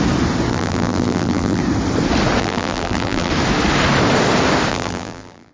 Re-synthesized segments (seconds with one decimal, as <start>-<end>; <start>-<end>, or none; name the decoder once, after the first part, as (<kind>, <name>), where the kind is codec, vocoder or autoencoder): 0.5-1.6 (vocoder, BigVGAN v2); 2.4-3.3; 4.7-5.5